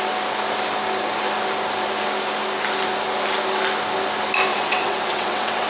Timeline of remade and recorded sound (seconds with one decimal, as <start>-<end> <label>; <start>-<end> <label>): 0.0-4.5 recorded; 4.5-5.7 remade